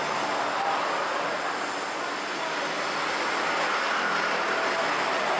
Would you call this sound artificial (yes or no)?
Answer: no